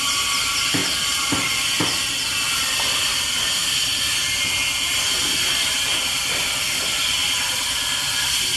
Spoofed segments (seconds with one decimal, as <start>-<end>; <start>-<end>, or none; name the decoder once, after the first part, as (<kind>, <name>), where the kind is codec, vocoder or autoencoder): none